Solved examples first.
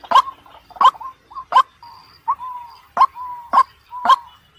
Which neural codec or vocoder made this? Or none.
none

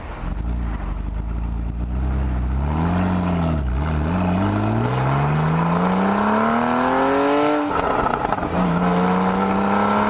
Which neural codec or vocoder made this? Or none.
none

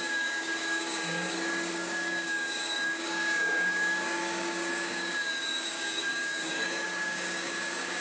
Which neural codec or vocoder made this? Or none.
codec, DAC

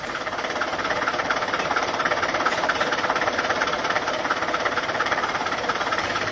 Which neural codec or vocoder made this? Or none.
vocoder, BigVGAN v2